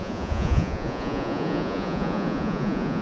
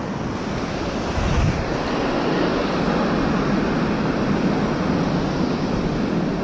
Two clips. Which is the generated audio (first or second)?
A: first